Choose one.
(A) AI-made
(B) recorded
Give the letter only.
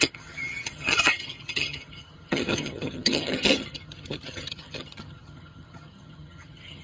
A